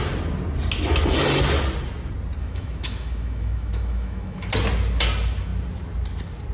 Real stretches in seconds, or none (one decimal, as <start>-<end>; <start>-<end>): 0.0-2.4; 4.5-6.5